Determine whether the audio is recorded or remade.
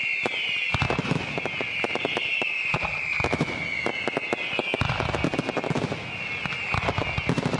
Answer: recorded